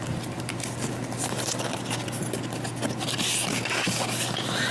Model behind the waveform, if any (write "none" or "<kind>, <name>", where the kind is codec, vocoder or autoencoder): none